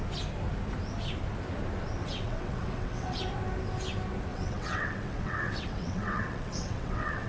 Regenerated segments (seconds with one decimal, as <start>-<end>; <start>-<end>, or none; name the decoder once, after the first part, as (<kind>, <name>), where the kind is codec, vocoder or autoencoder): 2.0-3.2 (vocoder, WaveNeXt); 4.3-7.3